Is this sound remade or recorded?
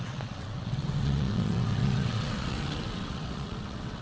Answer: remade